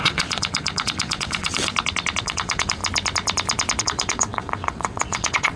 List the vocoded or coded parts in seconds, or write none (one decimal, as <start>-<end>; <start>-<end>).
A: 0.0-1.7; 2.2-2.8; 3.8-5.6